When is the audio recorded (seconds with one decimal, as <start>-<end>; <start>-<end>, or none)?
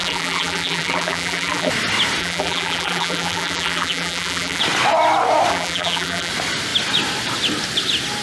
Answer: 1.7-2.2; 4.6-5.5; 6.3-8.2